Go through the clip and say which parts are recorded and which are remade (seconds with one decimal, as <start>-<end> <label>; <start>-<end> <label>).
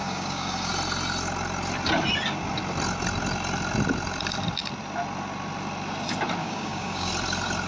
0.0-0.7 remade; 0.7-6.4 recorded; 6.4-7.1 remade; 7.1-7.7 recorded